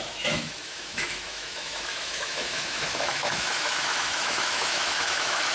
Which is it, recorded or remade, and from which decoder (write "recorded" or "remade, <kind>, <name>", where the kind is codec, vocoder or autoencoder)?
remade, autoencoder, DAC-VAE